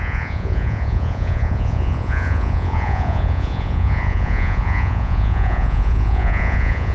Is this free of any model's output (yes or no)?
no